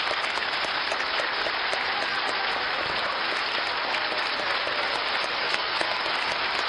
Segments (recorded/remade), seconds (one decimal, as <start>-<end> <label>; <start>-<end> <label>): 0.0-5.4 recorded; 5.4-6.0 remade; 6.0-6.7 recorded

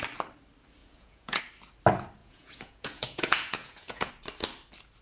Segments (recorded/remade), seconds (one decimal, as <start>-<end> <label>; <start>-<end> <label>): 0.0-0.8 recorded; 0.8-1.4 remade; 1.4-2.2 recorded; 2.2-4.1 remade; 4.1-5.0 recorded

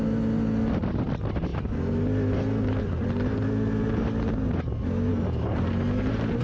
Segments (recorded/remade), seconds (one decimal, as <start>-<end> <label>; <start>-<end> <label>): 0.0-6.4 recorded

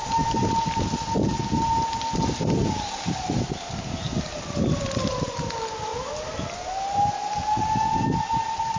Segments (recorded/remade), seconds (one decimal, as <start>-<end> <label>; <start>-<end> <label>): 0.0-8.8 recorded

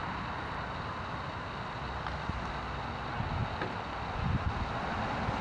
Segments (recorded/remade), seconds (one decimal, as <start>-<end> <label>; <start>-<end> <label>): 0.0-5.4 recorded